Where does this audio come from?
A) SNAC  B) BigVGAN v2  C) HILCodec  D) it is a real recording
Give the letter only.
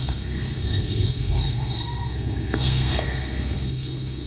A